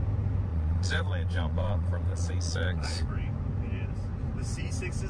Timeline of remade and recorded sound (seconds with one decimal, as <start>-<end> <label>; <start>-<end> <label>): 0.0-0.5 recorded; 0.5-3.1 remade; 3.1-5.1 recorded